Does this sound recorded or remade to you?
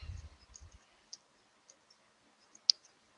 recorded